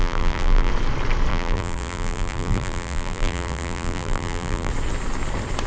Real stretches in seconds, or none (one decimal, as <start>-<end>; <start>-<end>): 0.7-1.3; 4.7-5.7